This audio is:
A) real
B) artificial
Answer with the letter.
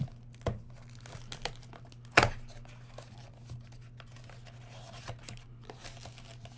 A